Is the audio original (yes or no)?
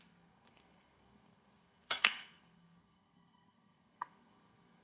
no